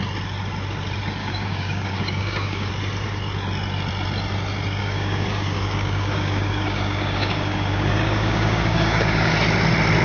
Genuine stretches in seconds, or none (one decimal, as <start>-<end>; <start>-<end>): 0.0-1.2; 2.7-4.8; 9.3-10.0